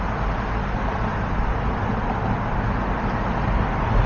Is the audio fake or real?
real